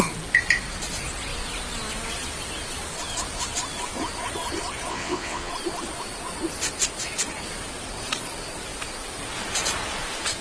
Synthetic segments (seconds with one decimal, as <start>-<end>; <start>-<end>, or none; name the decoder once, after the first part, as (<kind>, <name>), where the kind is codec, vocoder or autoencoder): 4.9-5.5 (vocoder, WaveNeXt)